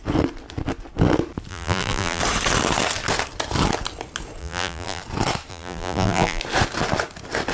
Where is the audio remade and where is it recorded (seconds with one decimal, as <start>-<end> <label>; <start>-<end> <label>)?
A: 0.0-1.5 recorded; 1.5-2.2 remade; 2.2-4.4 recorded; 4.4-5.0 remade; 5.0-5.5 recorded; 5.5-6.4 remade; 6.4-7.5 recorded